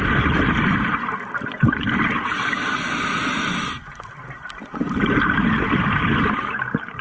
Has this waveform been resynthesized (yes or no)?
no